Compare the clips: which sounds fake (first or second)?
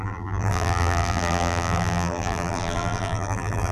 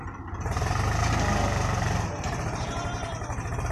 first